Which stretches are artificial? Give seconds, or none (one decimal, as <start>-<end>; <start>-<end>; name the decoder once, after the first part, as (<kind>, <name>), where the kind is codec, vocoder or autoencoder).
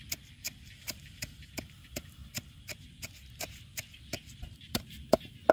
0.0-5.5 (vocoder, BigVGAN v2)